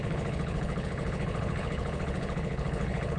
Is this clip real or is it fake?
fake